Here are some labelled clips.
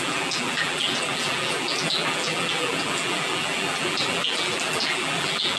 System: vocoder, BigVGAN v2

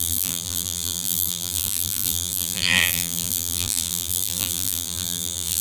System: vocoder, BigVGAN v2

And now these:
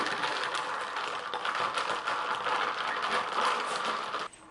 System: none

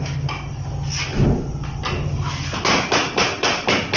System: none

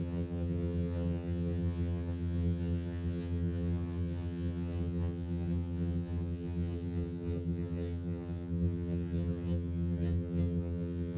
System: vocoder, HiFi-GAN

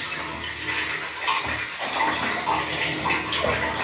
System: none